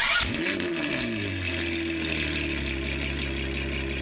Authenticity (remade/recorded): recorded